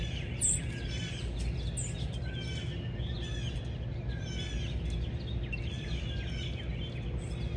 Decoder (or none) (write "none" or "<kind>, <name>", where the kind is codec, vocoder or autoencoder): none